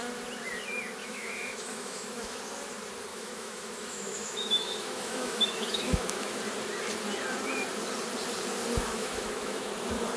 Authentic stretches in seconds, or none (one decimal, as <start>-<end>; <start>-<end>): 0.0-1.0; 2.4-3.1; 6.4-8.9; 9.7-10.2